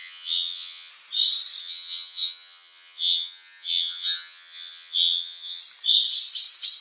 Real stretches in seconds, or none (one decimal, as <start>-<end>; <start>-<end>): 0.9-1.6; 5.6-6.8